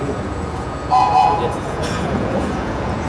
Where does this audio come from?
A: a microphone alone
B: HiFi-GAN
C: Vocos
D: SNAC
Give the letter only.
C